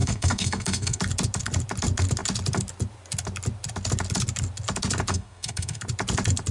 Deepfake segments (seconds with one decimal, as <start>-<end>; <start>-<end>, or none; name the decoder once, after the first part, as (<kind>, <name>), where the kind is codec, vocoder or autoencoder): 0.0-1.0 (codec, SNAC); 5.1-5.8